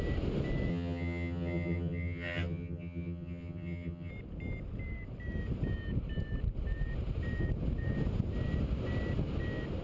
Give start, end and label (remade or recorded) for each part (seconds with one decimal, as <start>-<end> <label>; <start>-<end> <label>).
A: 0.0-0.7 recorded; 0.7-4.1 remade; 4.1-9.8 recorded